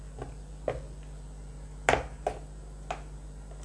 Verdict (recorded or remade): recorded